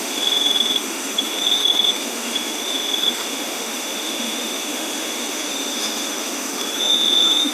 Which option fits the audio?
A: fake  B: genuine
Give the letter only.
A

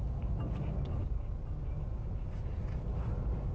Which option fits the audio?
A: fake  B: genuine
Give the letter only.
B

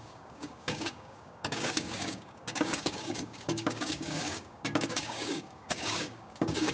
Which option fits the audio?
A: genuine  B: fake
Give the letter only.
B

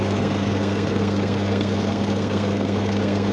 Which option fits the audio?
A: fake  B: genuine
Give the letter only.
A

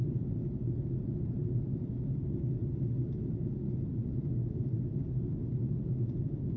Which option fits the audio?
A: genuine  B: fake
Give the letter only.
A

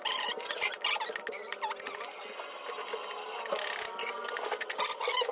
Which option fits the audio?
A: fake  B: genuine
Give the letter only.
B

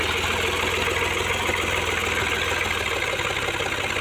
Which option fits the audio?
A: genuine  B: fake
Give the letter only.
A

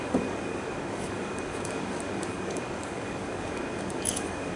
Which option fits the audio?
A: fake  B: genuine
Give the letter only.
A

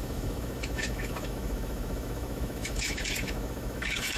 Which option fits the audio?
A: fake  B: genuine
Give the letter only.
A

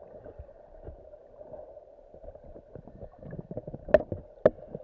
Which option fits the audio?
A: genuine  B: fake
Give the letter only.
A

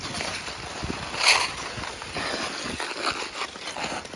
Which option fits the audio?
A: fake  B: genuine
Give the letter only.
B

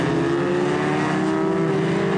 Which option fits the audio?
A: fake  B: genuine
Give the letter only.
B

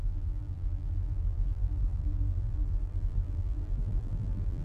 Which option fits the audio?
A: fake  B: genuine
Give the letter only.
A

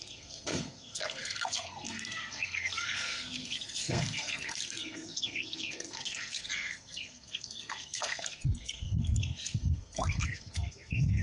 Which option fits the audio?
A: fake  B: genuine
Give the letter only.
A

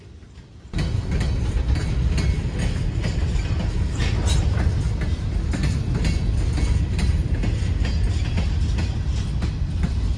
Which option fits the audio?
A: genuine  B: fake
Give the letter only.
A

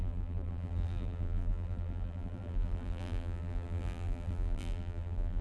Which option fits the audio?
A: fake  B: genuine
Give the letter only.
A